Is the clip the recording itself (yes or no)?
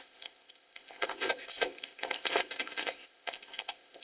no